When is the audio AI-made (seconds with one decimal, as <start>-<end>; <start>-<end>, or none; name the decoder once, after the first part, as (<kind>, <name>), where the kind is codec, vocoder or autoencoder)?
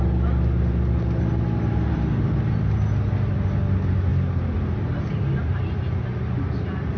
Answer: none